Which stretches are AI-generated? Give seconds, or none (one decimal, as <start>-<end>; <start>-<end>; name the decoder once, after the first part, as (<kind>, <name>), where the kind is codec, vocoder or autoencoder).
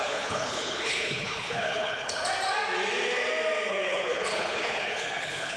0.0-2.2 (codec, HILCodec); 3.7-5.6